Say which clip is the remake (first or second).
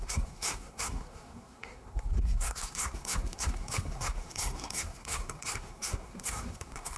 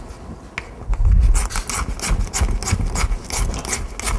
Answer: first